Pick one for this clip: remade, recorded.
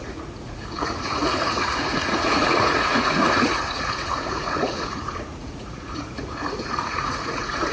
remade